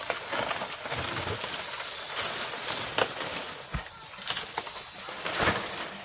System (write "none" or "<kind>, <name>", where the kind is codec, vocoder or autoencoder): none